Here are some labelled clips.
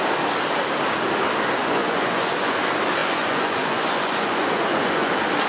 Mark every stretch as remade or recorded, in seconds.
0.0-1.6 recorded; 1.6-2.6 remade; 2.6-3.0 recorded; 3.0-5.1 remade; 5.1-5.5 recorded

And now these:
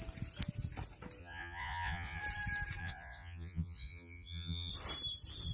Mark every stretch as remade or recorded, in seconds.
0.0-1.2 recorded; 1.2-2.2 remade; 2.2-2.8 recorded; 2.8-4.7 remade; 4.7-5.5 recorded

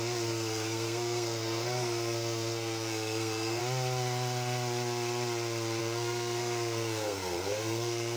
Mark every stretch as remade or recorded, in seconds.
0.0-3.6 remade; 3.6-5.8 recorded; 5.8-8.2 remade